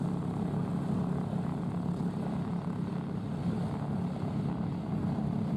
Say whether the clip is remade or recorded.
recorded